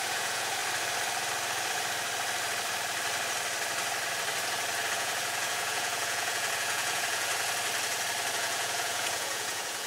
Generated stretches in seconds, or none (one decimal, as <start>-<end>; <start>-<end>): 0.0-0.6; 4.9-7.3; 8.3-9.9